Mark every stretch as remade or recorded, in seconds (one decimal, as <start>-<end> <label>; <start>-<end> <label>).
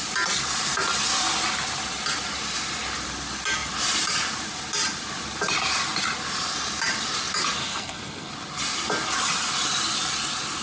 0.0-7.6 recorded; 7.6-8.3 remade; 8.3-10.6 recorded